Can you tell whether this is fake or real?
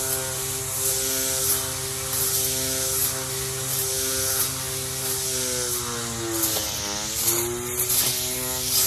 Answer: real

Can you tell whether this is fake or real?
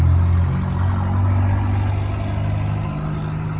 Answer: real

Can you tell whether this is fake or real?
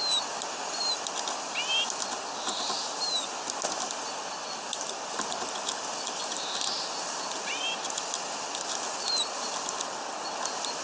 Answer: real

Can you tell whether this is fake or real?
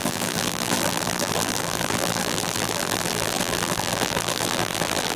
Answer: fake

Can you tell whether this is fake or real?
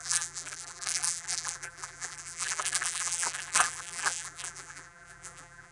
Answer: fake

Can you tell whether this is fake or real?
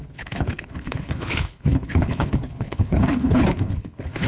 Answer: fake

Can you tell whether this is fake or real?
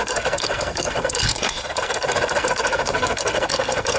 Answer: fake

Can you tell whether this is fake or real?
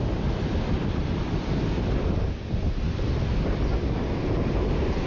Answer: real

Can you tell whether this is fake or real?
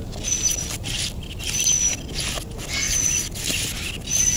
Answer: real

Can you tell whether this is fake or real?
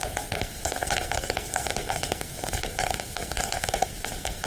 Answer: fake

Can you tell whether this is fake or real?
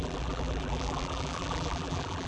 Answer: fake